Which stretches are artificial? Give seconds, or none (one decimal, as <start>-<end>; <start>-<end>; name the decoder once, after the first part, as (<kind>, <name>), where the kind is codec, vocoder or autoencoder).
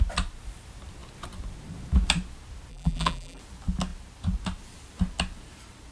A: 2.7-3.4 (vocoder, BigVGAN v2)